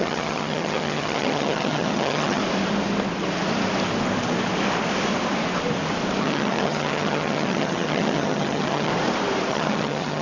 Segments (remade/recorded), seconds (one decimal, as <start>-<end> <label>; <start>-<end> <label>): 0.0-2.4 remade; 2.4-6.2 recorded; 6.2-8.9 remade; 8.9-9.5 recorded; 9.5-10.2 remade